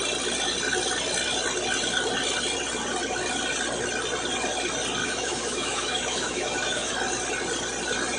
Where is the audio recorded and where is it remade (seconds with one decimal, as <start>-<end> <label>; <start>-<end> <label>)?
0.0-5.0 recorded; 5.0-6.9 remade; 6.9-8.2 recorded